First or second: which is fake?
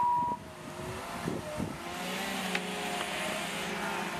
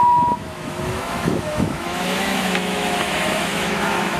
second